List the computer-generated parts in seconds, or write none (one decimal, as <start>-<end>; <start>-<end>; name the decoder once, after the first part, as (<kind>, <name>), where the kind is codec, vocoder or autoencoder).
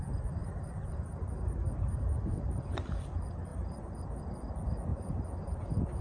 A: 0.4-3.0 (vocoder, BigVGAN v2); 3.5-4.2; 4.9-6.0